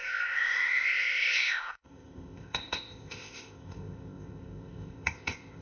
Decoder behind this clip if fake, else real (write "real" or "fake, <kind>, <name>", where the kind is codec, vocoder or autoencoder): fake, codec, ZipCodec